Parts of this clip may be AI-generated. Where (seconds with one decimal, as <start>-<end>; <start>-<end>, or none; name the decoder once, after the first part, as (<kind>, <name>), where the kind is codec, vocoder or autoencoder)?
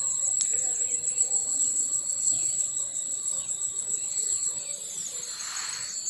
1.4-4.6 (vocoder, WaveNeXt)